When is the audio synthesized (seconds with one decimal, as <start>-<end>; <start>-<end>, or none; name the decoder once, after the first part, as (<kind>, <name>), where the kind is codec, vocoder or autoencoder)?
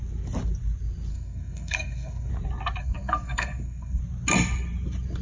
1.1-2.3 (codec, SNAC); 2.8-4.0